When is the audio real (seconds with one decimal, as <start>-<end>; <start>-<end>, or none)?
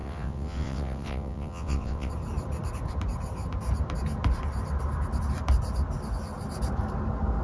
2.1-7.4